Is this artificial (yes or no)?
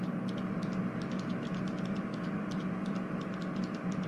no